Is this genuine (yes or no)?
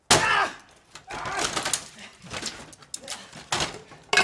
yes